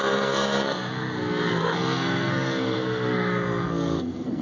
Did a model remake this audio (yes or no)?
yes